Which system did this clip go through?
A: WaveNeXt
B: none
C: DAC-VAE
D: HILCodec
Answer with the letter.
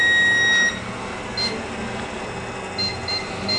B